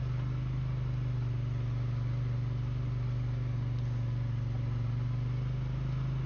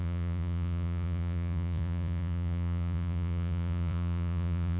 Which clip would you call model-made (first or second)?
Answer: second